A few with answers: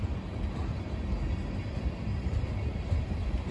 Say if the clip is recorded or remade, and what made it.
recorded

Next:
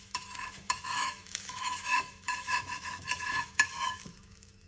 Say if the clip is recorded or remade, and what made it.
remade, autoencoder, DAC-VAE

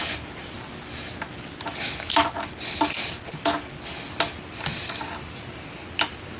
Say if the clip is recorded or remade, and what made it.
recorded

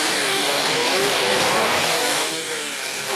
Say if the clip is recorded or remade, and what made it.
remade, codec, DAC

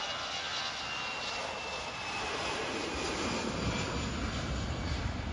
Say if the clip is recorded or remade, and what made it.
recorded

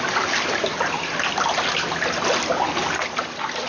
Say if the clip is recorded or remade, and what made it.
recorded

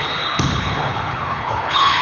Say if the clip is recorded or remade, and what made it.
remade, codec, HILCodec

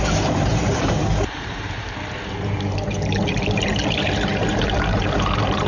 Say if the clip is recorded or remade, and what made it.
remade, vocoder, BigVGAN v2